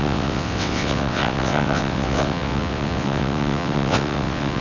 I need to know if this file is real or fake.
fake